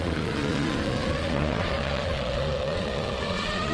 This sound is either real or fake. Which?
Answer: fake